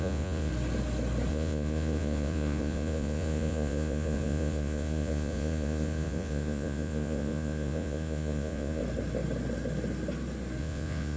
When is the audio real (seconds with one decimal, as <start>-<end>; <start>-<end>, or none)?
0.5-1.3; 8.8-10.6